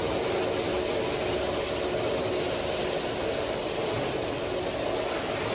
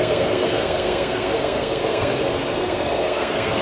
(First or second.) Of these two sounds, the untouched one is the first